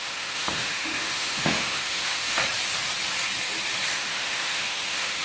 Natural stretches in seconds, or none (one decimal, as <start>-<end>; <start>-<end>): 2.4-3.9